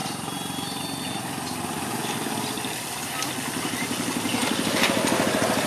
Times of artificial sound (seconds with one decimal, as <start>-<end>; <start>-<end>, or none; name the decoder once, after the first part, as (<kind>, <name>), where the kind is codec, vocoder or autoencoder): none